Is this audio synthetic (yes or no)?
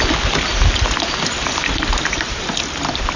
no